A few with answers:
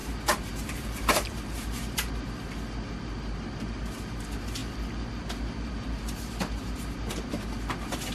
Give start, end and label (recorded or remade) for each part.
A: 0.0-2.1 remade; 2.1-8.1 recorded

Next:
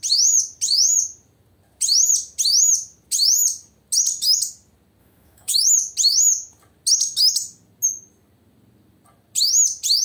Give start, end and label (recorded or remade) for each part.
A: 0.0-5.0 recorded; 5.0-5.7 remade; 5.7-10.0 recorded

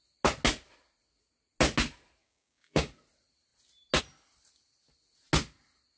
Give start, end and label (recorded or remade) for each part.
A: 0.0-2.2 recorded; 2.2-2.9 remade; 2.9-6.0 recorded

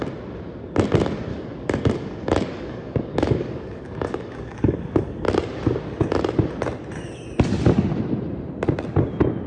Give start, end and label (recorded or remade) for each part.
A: 0.0-1.3 recorded; 1.3-5.3 remade; 5.3-9.5 recorded

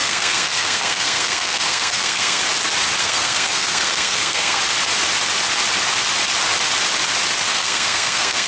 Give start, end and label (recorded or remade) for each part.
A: 0.0-2.4 remade; 2.4-3.0 recorded; 3.0-4.6 remade; 4.6-7.5 recorded; 7.5-8.5 remade